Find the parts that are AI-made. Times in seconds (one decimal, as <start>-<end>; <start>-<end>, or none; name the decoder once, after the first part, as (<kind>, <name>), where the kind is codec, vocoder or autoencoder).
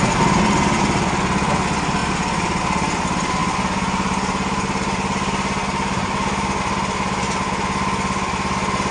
3.4-6.6 (vocoder, BigVGAN v2)